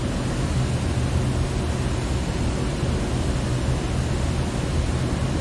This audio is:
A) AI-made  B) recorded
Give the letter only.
B